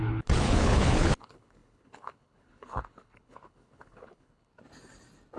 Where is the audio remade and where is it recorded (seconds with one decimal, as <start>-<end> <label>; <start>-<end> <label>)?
0.0-4.5 remade; 4.5-5.4 recorded